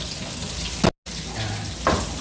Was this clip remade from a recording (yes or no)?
no